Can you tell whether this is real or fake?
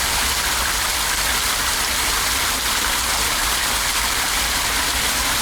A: real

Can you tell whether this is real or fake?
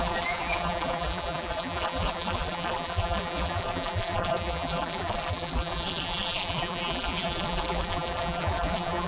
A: fake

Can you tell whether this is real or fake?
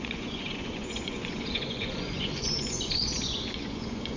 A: fake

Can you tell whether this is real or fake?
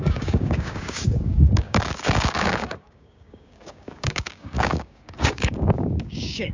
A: fake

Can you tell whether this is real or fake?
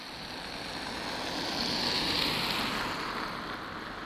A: real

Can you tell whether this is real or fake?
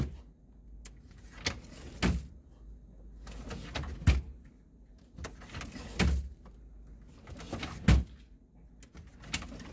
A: real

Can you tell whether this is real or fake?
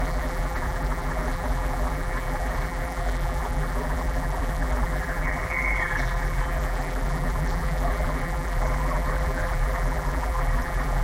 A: fake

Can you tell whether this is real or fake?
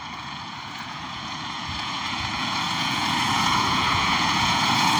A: fake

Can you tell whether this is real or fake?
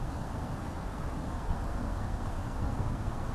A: fake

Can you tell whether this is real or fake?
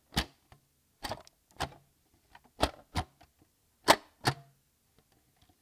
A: real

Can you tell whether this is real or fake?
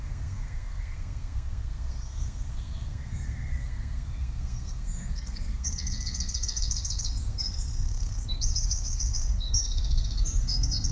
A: fake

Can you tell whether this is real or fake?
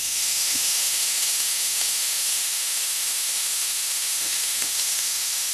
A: fake